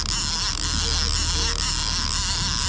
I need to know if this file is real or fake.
real